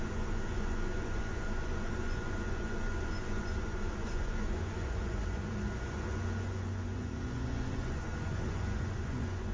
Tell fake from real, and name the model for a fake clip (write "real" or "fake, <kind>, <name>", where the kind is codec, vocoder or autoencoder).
fake, vocoder, Vocos